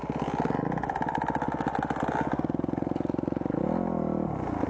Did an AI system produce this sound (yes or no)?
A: no